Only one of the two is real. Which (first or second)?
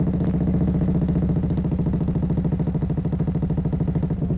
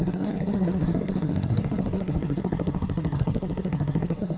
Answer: first